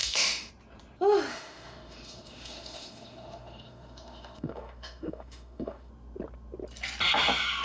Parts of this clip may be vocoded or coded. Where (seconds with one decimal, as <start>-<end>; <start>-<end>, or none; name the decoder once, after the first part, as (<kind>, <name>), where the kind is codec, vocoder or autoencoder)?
0.0-0.5 (autoencoder, DAC-VAE); 1.3-5.9